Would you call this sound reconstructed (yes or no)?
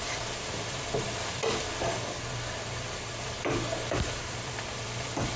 yes